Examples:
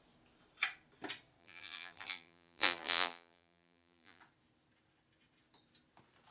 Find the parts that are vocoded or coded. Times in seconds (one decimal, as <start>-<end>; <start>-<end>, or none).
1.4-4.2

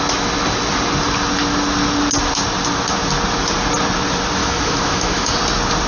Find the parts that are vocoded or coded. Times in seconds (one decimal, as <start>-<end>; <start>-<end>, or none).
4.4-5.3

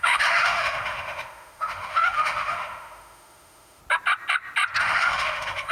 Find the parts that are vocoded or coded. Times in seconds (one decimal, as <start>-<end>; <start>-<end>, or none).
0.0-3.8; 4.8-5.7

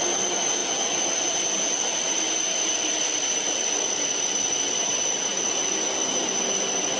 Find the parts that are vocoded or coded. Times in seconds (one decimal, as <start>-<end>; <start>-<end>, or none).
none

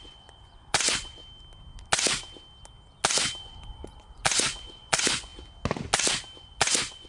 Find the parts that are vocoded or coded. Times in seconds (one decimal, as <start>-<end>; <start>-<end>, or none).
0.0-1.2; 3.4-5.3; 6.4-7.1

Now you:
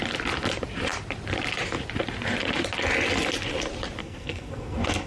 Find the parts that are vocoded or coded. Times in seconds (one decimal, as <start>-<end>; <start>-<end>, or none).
4.0-5.1